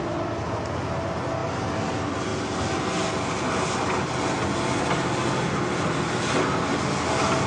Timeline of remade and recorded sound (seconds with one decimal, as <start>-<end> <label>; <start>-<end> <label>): 0.0-7.5 recorded